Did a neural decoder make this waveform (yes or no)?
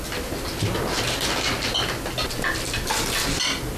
no